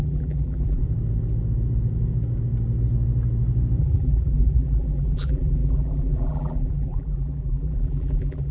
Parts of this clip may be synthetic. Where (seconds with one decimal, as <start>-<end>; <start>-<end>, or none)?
0.0-0.8; 3.8-8.5